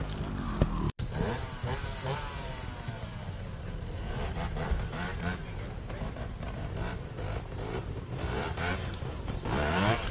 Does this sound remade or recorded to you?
remade